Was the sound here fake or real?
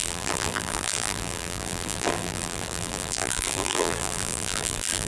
fake